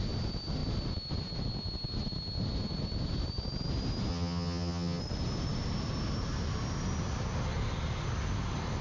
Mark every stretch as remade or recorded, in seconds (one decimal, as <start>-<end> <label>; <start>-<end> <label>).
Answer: 0.0-4.1 recorded; 4.1-5.0 remade; 5.0-8.8 recorded